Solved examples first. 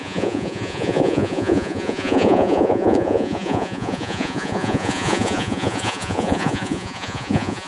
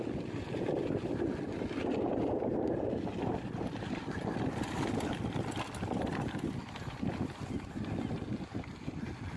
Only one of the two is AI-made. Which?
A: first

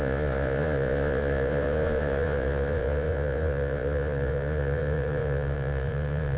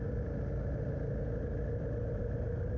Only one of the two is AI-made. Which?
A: first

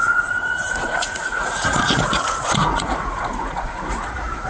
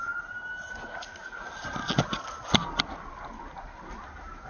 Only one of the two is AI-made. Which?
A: first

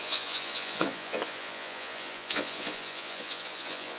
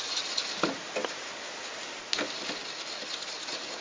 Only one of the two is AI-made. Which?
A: first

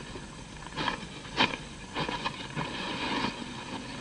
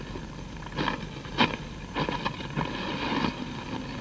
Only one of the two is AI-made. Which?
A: first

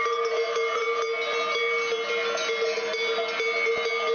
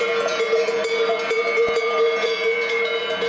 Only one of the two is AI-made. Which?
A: second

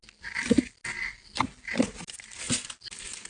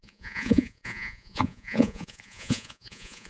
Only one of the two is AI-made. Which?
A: second